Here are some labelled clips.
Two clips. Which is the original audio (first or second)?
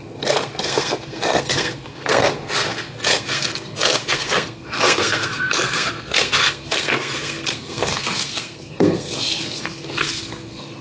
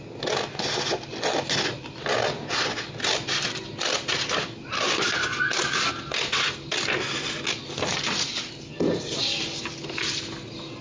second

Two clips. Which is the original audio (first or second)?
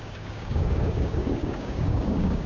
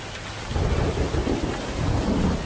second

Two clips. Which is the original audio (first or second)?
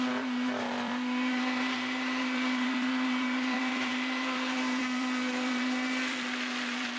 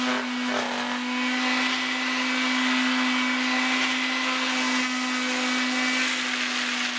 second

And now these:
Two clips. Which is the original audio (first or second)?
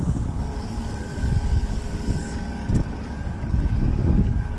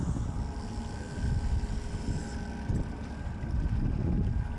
second